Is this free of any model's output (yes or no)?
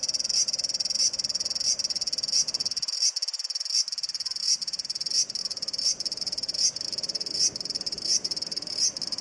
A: yes